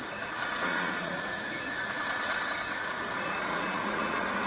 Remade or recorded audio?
remade